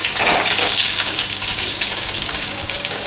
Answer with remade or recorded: remade